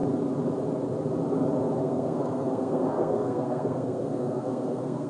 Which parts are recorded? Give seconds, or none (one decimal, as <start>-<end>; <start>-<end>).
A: 0.0-1.8